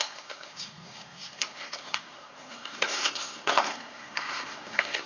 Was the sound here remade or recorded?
remade